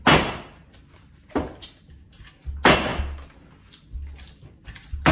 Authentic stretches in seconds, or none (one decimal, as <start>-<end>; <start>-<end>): 0.0-5.1